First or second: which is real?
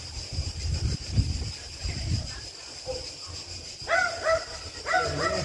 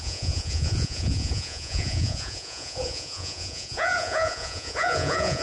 first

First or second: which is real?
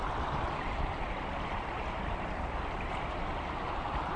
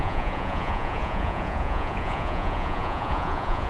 first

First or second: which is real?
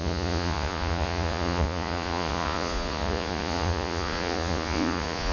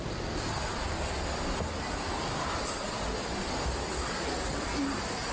second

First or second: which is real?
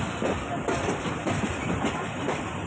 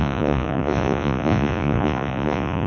first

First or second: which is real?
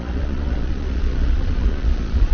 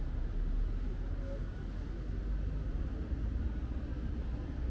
second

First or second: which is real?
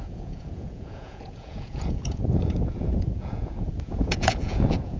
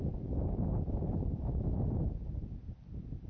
second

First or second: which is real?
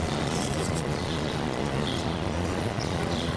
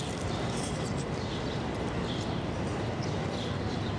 second